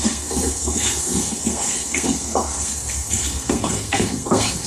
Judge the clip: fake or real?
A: fake